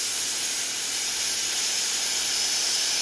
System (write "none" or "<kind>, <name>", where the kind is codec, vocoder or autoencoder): none